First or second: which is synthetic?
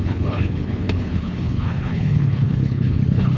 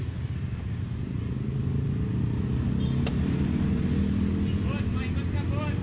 first